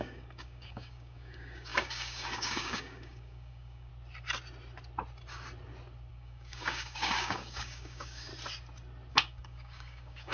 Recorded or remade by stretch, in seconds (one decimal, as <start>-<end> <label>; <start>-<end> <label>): 0.0-3.9 remade; 3.9-6.1 recorded; 6.1-8.3 remade; 8.3-9.1 recorded; 9.1-10.3 remade